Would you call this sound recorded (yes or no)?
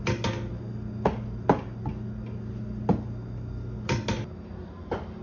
yes